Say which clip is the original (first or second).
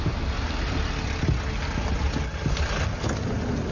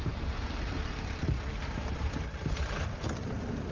first